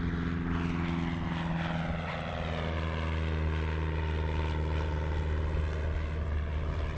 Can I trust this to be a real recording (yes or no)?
yes